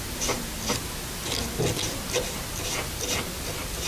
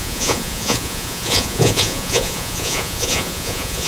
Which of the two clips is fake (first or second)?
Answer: second